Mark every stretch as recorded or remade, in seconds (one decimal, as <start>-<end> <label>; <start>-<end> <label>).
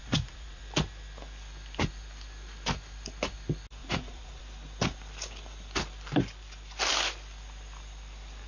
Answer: 0.0-0.6 remade; 0.6-3.8 recorded; 3.8-4.4 remade; 4.4-8.5 recorded